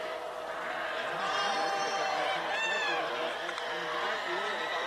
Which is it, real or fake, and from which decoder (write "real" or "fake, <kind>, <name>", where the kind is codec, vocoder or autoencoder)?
fake, vocoder, BigVGAN v2